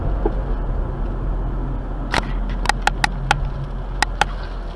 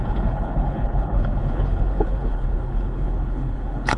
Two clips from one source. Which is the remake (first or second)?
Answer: second